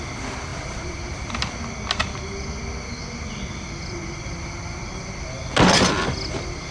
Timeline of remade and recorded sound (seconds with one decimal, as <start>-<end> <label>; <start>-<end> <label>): 0.0-0.5 recorded; 0.5-1.3 remade; 1.3-6.7 recorded